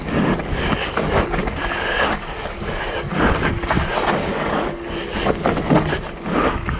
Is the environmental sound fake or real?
fake